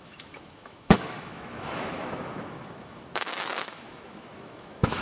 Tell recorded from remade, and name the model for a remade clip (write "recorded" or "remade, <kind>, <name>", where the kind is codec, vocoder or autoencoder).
remade, autoencoder, DAC-VAE